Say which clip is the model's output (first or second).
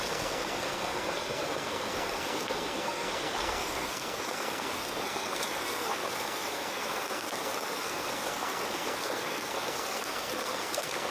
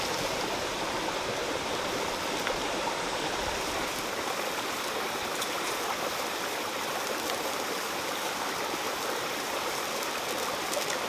first